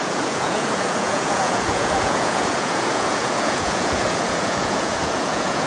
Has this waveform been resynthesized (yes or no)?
yes